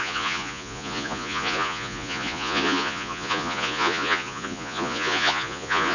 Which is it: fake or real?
fake